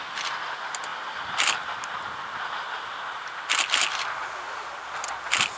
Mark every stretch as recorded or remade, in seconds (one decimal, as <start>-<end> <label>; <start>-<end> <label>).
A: 0.0-5.6 recorded